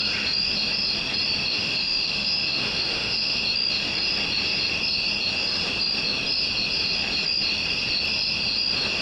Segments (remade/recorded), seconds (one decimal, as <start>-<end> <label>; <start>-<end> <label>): 0.0-1.5 recorded; 1.5-3.4 remade; 3.4-9.0 recorded